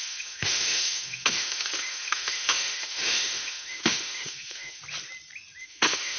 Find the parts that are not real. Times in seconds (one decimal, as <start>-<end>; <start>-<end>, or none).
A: 0.0-4.8; 5.6-6.2